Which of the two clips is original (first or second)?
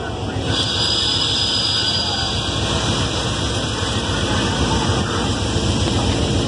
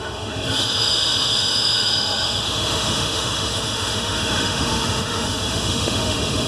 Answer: first